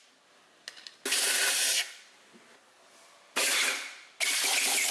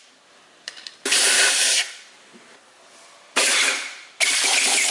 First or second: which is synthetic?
second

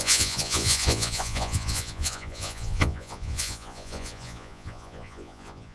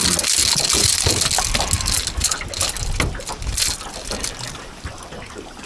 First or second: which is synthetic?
first